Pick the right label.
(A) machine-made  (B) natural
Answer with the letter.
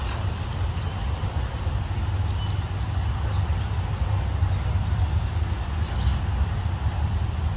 B